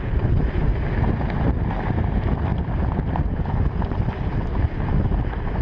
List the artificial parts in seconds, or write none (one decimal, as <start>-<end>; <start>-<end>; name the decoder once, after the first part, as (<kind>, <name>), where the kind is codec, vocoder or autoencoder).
0.0-0.7 (vocoder, BigVGAN v2); 2.0-5.6